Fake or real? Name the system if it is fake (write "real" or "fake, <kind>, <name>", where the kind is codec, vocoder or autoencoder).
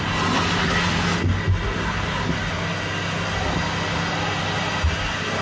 real